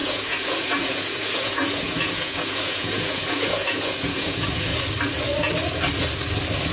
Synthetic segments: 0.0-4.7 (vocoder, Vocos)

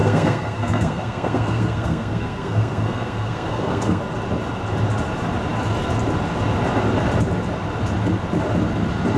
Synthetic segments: 0.0-4.0 (codec, SNAC)